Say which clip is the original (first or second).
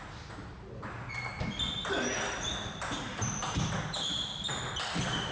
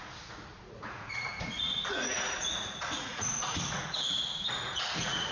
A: first